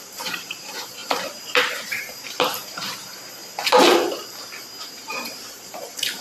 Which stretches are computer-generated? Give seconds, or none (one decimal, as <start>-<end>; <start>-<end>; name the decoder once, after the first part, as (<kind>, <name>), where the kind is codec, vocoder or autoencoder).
0.0-3.4 (vocoder, BigVGAN v2); 4.7-6.2